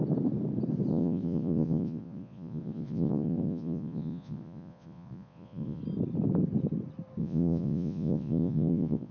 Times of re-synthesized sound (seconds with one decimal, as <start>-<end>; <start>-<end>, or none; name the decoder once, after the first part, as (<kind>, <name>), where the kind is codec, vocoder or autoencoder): 0.9-5.8 (vocoder, Vocos); 7.2-9.1